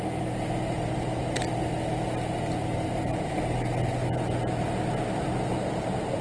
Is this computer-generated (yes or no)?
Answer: no